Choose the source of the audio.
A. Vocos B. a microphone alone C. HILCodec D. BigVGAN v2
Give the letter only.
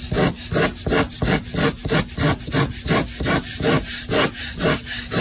B